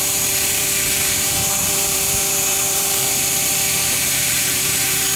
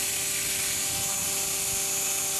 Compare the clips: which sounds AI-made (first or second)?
first